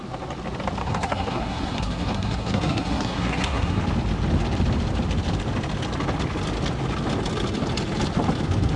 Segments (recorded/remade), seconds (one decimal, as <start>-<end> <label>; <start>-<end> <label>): 0.0-0.8 recorded; 0.8-3.8 remade; 3.8-8.8 recorded